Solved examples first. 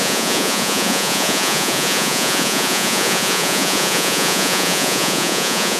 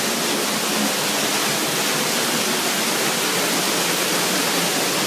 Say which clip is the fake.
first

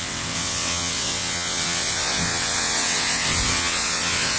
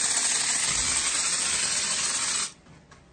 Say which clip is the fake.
first